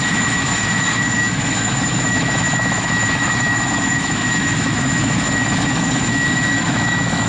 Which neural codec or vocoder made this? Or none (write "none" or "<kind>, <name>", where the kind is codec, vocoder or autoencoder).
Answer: autoencoder, DAC-VAE